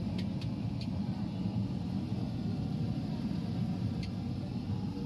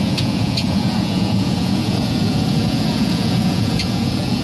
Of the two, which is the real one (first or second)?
first